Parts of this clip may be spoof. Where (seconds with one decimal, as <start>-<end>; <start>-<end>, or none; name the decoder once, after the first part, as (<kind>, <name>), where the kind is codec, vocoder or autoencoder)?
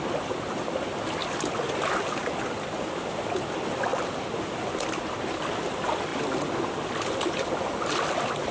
none